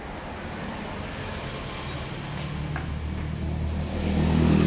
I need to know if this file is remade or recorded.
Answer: recorded